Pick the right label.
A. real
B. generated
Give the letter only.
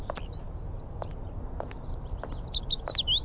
A